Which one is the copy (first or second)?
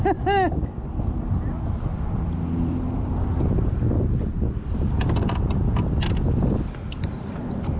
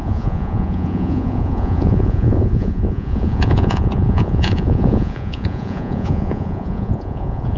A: second